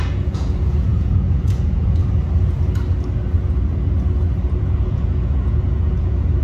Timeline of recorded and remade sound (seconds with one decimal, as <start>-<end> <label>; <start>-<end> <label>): 0.0-2.0 remade; 2.0-4.6 recorded; 4.6-6.4 remade